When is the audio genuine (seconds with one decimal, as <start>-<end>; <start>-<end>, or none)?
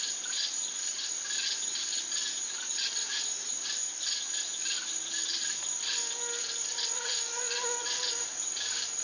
1.8-2.7; 3.8-5.6